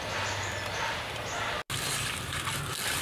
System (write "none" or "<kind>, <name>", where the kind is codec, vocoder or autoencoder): none